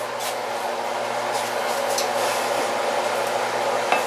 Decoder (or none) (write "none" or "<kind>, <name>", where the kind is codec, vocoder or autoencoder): none